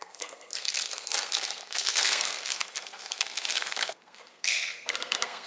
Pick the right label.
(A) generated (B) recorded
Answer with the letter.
A